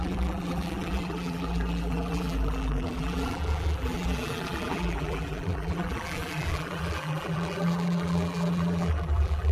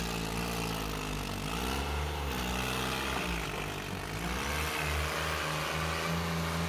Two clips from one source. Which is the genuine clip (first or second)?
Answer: second